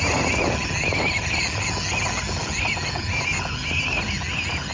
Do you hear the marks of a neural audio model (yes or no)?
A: no